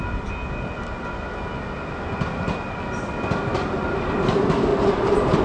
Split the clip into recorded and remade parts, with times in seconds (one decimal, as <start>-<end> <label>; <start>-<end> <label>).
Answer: 0.0-4.7 recorded; 4.7-5.4 remade